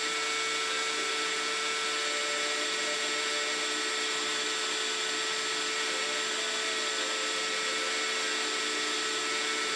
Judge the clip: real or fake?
real